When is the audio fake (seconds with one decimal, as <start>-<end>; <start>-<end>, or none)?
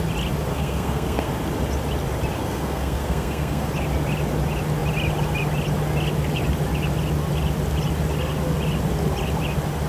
0.5-1.3; 2.4-3.7